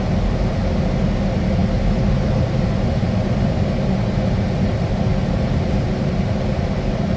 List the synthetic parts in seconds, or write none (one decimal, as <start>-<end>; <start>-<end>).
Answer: none